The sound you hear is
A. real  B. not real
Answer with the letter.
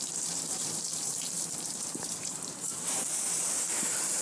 B